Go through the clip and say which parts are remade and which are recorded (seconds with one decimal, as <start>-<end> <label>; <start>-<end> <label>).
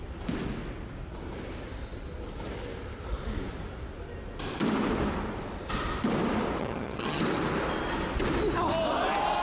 0.0-6.6 recorded; 6.6-7.2 remade; 7.2-9.4 recorded